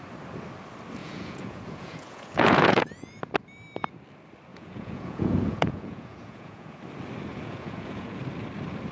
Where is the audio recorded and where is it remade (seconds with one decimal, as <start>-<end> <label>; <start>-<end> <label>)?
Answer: 0.0-1.0 recorded; 1.0-3.2 remade; 3.2-4.5 recorded; 4.5-6.8 remade; 6.8-7.3 recorded; 7.3-8.2 remade; 8.2-8.9 recorded